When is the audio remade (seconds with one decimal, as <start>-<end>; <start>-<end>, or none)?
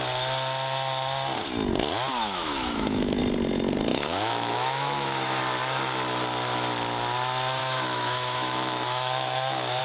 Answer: 2.1-3.2; 3.9-5.4; 7.6-9.8